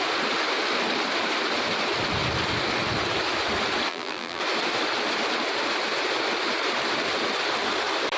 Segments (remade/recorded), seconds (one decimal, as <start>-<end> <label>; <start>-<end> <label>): 0.0-3.9 recorded; 3.9-4.4 remade; 4.4-8.2 recorded